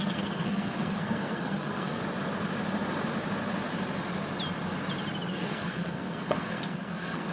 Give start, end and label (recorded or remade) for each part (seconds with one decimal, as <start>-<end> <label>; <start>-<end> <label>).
0.0-2.0 remade; 2.0-5.3 recorded; 5.3-7.3 remade